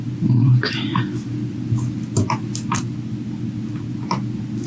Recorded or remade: recorded